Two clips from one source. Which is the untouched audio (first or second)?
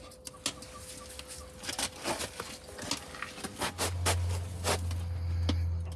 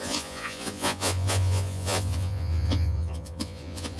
first